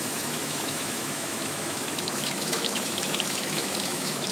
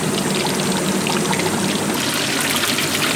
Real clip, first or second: second